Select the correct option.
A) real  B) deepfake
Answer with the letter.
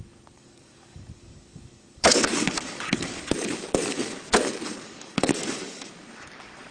B